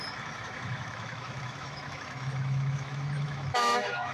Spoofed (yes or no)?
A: yes